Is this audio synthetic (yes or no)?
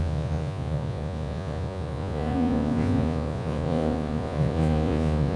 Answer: yes